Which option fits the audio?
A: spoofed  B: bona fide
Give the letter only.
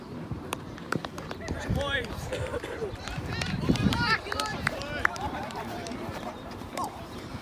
A